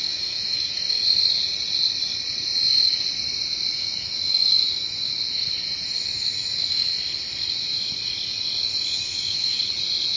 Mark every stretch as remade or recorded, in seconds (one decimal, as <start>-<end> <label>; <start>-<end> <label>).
0.0-1.0 remade; 1.0-3.7 recorded; 3.7-5.1 remade; 5.1-5.8 recorded; 5.8-6.8 remade; 6.8-8.9 recorded; 8.9-9.6 remade; 9.6-10.2 recorded